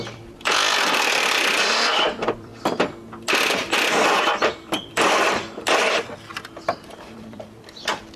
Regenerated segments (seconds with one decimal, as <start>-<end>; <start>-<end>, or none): 0.0-2.5; 3.2-6.3; 6.9-8.2